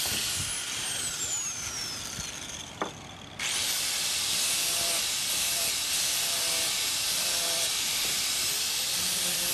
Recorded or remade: remade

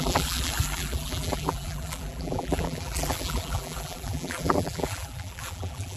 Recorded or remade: remade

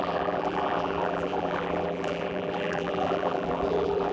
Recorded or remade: remade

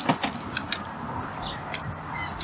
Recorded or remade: recorded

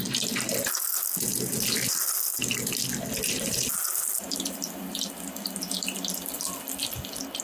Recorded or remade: recorded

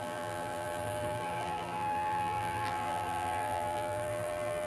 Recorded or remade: remade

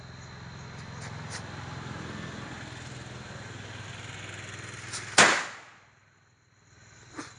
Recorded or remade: recorded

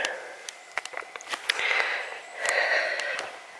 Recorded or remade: recorded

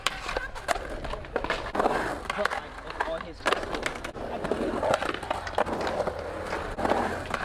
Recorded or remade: recorded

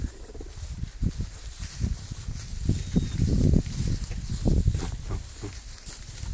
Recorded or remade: recorded